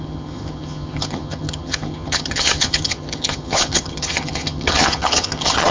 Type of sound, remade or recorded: remade